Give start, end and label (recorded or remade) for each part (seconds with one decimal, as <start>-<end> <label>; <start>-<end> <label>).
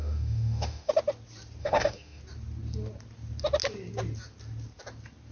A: 0.0-0.9 remade; 0.9-1.6 recorded; 1.6-2.2 remade; 2.2-5.3 recorded